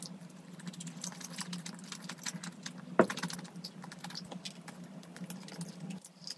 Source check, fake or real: real